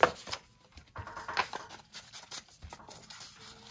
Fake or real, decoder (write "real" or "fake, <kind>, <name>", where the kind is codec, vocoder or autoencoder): real